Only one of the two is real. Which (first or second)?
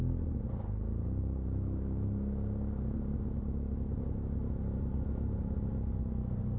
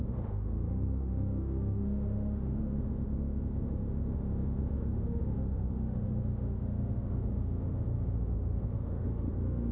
first